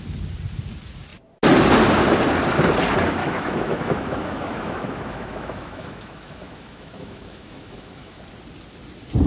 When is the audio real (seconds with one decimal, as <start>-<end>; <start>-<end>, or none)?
0.0-3.2; 8.2-9.3